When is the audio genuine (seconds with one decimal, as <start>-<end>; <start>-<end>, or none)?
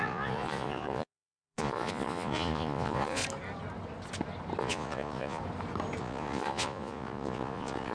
3.2-4.6; 5.4-6.0